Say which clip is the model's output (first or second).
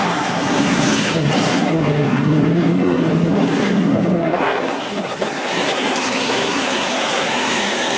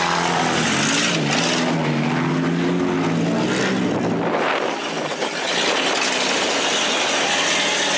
first